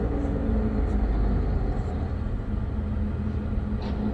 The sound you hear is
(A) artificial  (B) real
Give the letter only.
B